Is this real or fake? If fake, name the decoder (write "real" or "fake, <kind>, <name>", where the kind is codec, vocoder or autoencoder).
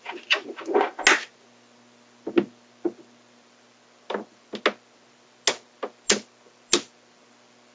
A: real